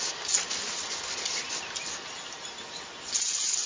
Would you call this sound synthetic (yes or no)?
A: no